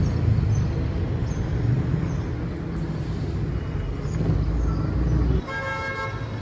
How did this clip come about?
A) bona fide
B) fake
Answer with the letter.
A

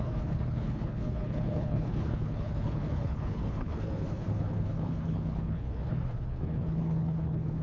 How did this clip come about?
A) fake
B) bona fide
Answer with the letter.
A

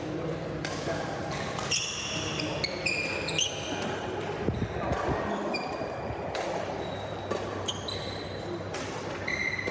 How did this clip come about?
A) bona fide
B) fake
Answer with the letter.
A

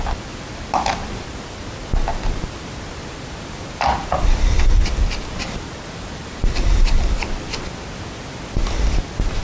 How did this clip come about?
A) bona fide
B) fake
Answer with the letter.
A